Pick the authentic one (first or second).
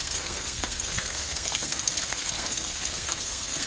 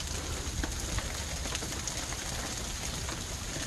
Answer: second